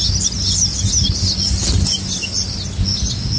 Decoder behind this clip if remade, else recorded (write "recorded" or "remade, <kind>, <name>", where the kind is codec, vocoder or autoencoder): recorded